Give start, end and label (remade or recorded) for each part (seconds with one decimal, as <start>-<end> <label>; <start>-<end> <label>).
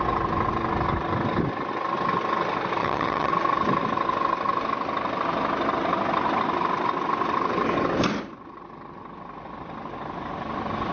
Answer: 0.0-2.8 recorded; 2.8-3.3 remade; 3.3-10.9 recorded